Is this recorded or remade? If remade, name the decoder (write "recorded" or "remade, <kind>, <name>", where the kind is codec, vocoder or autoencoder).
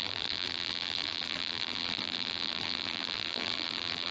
remade, vocoder, BigVGAN v2